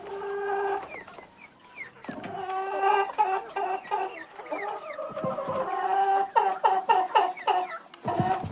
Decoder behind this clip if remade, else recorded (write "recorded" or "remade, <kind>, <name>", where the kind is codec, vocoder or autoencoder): recorded